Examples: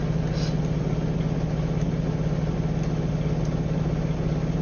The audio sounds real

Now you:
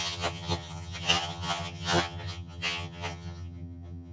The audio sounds fake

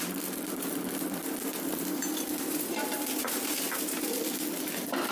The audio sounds fake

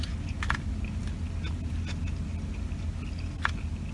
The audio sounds real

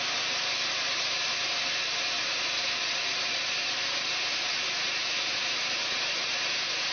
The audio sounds real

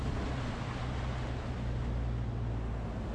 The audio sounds real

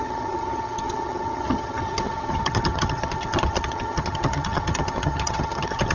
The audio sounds fake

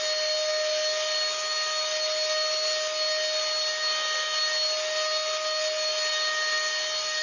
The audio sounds real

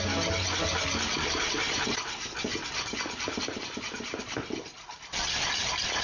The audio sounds real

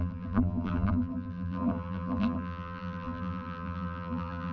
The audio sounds fake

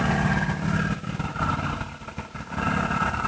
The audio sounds real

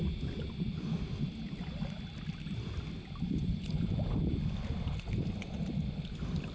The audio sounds real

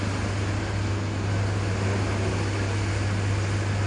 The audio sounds real